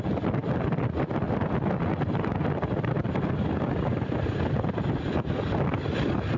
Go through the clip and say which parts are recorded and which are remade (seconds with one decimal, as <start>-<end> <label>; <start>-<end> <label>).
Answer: 0.0-6.4 recorded